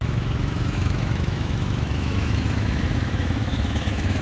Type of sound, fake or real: fake